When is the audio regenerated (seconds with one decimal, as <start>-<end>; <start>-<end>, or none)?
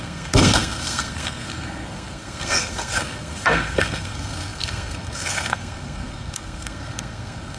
0.0-7.6